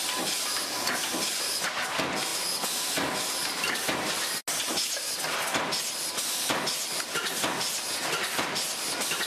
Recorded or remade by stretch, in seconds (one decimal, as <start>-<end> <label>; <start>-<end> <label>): 0.0-4.4 remade; 4.4-6.9 recorded; 6.9-9.3 remade